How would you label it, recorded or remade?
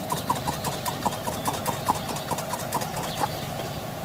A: recorded